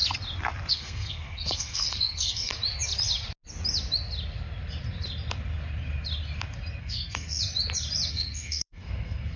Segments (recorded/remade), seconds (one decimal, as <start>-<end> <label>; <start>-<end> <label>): 0.0-0.7 recorded; 0.7-2.5 remade; 2.5-6.8 recorded; 6.8-7.4 remade; 7.4-8.1 recorded; 8.1-9.4 remade